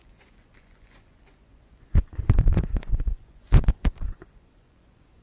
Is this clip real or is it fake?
fake